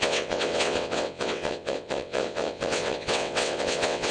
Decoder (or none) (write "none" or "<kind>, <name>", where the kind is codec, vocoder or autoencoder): vocoder, WaveNeXt